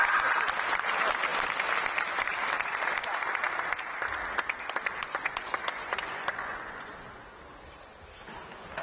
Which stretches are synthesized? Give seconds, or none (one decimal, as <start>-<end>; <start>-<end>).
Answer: 4.9-6.9